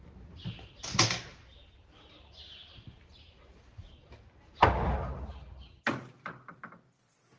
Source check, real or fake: real